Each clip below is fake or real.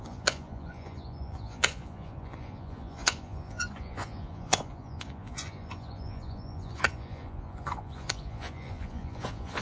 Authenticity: fake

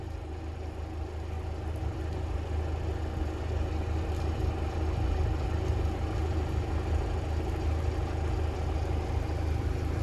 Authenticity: real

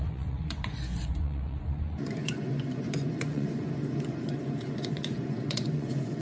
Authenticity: fake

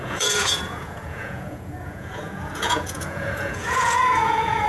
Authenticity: fake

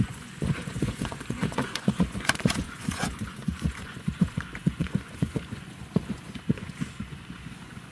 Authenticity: fake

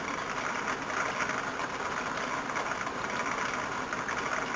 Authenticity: real